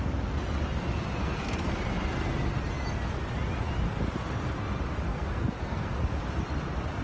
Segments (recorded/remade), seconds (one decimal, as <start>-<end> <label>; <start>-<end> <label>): 0.0-1.2 recorded; 1.2-1.7 remade; 1.7-5.1 recorded; 5.1-5.9 remade; 5.9-7.0 recorded